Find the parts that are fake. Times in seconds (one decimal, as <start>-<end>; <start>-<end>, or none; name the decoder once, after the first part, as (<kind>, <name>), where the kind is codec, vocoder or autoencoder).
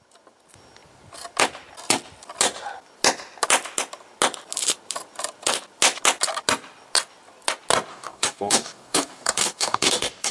7.9-10.3 (codec, DAC)